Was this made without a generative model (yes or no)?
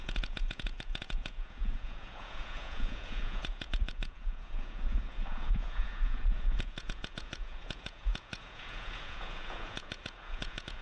no